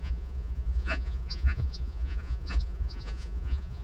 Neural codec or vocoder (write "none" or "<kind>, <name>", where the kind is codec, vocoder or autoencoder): vocoder, Vocos